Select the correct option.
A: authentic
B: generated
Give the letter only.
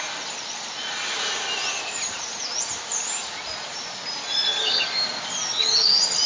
A